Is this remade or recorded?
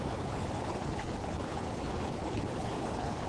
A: remade